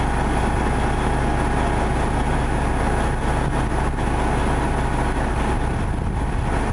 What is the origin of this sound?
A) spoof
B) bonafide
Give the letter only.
B